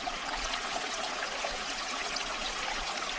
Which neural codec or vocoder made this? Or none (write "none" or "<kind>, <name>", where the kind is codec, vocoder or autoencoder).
vocoder, Vocos